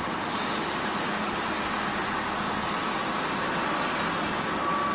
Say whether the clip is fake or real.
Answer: real